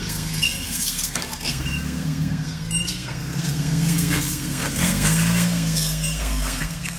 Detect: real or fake fake